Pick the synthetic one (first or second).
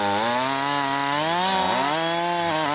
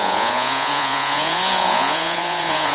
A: second